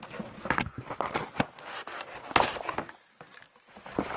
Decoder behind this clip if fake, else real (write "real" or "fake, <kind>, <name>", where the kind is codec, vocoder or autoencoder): real